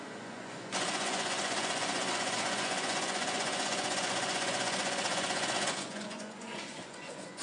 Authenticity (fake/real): fake